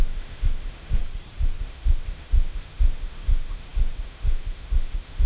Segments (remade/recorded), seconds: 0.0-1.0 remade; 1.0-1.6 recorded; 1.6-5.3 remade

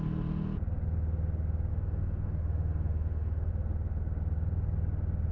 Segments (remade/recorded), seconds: 0.0-1.7 recorded; 1.7-3.5 remade; 3.5-5.3 recorded

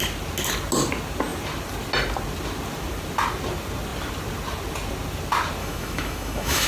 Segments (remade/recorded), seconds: 0.0-5.6 recorded; 5.6-6.7 remade

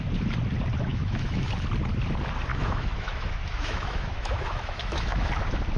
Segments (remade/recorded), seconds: 0.0-0.9 recorded; 0.9-1.5 remade; 1.5-2.5 recorded; 2.5-5.3 remade; 5.3-5.8 recorded

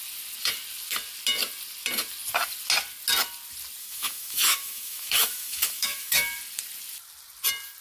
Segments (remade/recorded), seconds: 0.0-3.8 recorded; 3.8-6.4 remade; 6.4-7.8 recorded

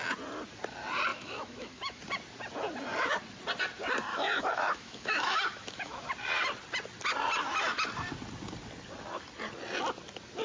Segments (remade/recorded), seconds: 0.0-1.1 recorded; 1.1-2.0 remade; 2.0-4.1 recorded; 4.1-6.1 remade; 6.1-10.4 recorded

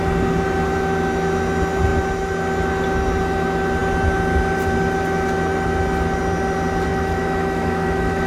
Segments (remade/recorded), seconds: 0.0-6.9 recorded; 6.9-8.3 remade